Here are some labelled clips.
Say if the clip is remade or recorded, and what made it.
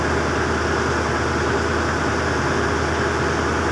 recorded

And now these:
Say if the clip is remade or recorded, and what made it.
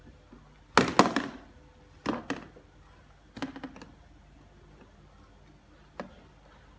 recorded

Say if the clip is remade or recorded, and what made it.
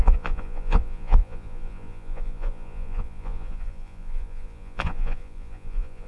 remade, vocoder, Vocos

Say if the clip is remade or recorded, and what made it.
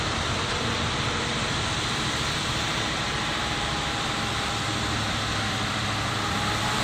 remade, vocoder, BigVGAN v2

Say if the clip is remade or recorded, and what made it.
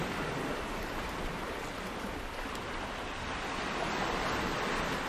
recorded